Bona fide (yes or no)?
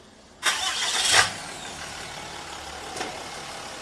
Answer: yes